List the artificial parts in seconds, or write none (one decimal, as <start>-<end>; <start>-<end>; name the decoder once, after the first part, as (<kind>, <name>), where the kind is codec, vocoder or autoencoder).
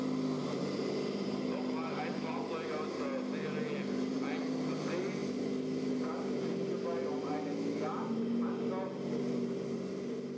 0.4-1.4 (vocoder, BigVGAN v2)